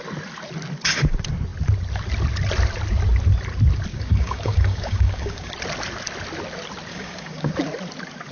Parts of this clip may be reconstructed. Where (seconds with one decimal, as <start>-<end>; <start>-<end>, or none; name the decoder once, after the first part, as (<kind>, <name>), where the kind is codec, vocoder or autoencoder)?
3.9-5.5 (codec, DAC); 6.9-7.5